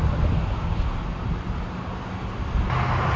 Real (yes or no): yes